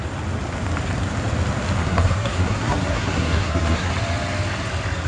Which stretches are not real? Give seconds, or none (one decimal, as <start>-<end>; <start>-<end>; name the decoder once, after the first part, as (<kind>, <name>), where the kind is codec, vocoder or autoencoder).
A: 1.8-3.9 (codec, SNAC)